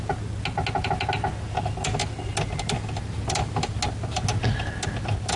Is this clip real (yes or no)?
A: yes